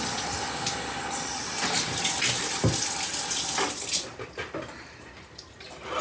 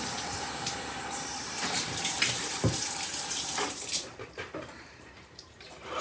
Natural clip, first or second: first